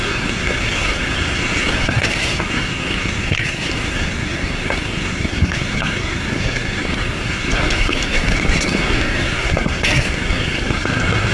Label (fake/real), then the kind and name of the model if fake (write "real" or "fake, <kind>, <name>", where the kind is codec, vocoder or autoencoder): fake, codec, SNAC